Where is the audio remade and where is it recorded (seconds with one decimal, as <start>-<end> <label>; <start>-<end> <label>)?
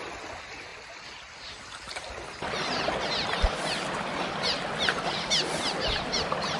0.0-6.6 recorded